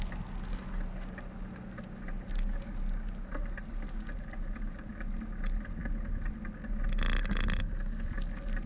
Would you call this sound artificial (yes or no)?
no